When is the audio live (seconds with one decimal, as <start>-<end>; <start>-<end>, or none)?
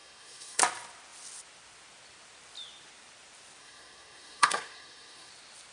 0.6-3.6; 5.3-5.7